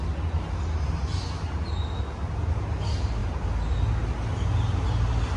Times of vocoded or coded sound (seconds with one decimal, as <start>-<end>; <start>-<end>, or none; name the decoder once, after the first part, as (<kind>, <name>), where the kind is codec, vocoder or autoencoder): none